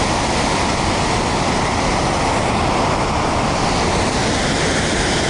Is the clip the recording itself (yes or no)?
yes